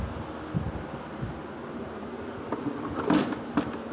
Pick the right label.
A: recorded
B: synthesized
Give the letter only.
A